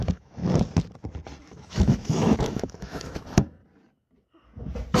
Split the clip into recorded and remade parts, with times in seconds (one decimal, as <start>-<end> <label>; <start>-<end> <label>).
0.0-0.4 remade; 0.4-1.4 recorded; 1.4-3.6 remade; 3.6-5.0 recorded